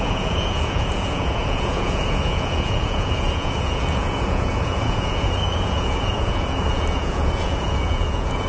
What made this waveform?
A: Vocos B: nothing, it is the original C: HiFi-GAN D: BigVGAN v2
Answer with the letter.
A